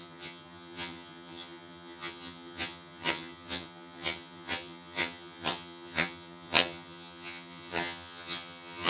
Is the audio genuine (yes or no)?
no